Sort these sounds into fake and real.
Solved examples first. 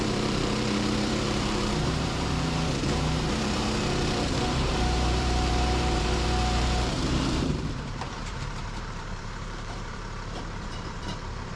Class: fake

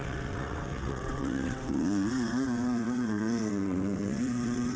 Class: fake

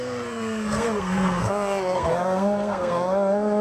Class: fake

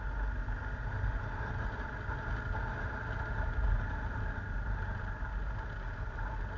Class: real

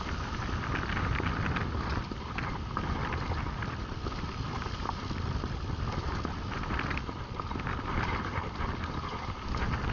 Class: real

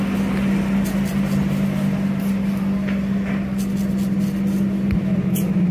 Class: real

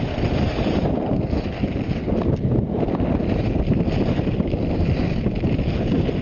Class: real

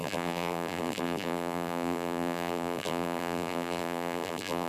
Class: fake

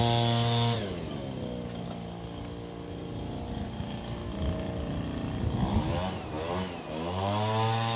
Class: real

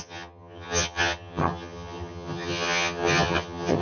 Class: fake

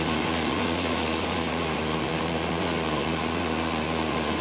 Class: fake